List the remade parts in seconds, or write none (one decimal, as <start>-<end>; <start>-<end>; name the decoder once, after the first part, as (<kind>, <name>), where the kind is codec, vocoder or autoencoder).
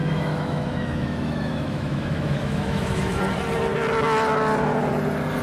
0.0-3.2 (autoencoder, DAC-VAE)